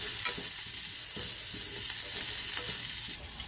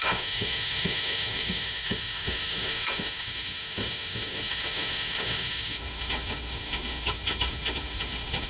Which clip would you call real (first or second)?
first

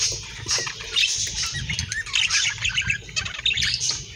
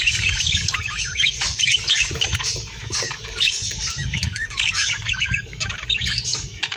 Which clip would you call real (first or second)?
first